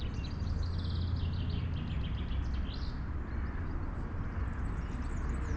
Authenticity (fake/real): real